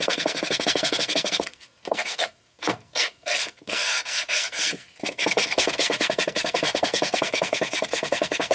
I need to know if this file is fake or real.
fake